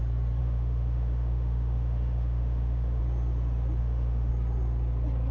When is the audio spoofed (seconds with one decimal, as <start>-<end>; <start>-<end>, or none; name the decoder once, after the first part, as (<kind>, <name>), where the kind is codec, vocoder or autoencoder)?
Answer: 0.4-3.0 (autoencoder, DAC-VAE); 3.8-4.3